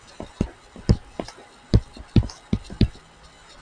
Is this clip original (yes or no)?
yes